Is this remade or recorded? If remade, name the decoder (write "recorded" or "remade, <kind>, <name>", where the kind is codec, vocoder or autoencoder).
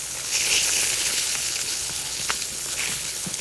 remade, codec, HILCodec